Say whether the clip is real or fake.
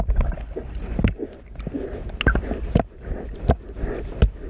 real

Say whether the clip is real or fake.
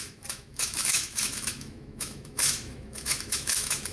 fake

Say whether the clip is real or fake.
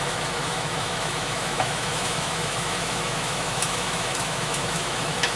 fake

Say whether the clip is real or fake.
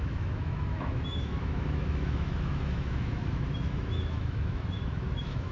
fake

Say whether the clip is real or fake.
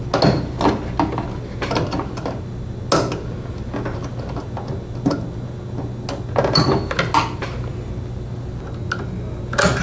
real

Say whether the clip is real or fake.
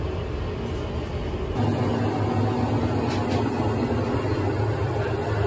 real